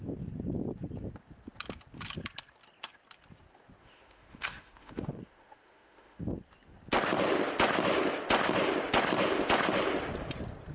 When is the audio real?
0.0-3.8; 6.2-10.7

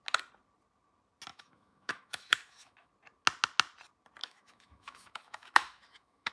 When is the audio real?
0.0-1.3; 2.9-4.2

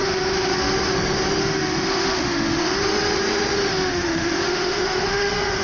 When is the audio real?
0.6-1.4; 2.8-3.7

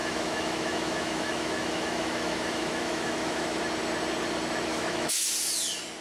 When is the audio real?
3.6-4.7; 5.3-6.0

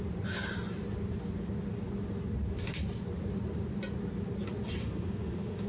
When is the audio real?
0.0-4.8

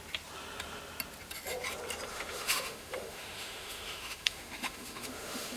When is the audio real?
0.0-2.1

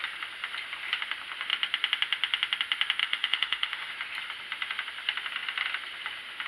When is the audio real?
0.0-3.0; 3.9-6.5